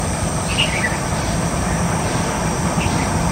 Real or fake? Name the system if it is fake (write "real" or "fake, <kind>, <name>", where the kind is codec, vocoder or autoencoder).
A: real